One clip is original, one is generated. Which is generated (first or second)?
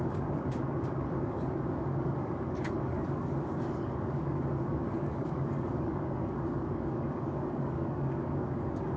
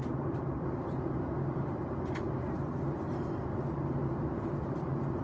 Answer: first